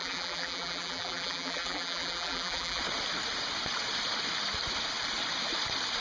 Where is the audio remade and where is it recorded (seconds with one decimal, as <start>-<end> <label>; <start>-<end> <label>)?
0.0-2.8 remade; 2.8-6.0 recorded